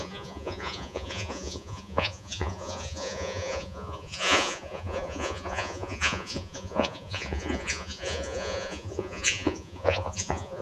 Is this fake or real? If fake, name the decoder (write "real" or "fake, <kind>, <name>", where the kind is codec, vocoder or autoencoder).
fake, vocoder, Vocos